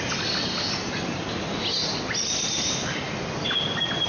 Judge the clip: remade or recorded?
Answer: recorded